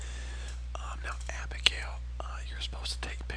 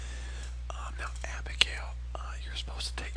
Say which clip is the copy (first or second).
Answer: first